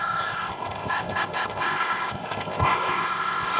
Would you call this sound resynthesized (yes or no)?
yes